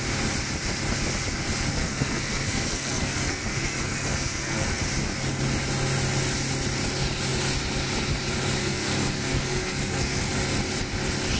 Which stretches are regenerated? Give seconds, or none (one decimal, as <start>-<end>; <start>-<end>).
1.7-4.8; 8.6-10.3